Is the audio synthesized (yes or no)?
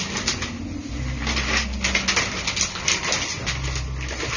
no